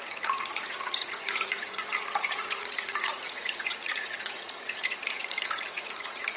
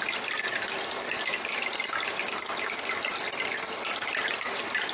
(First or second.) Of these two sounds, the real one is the second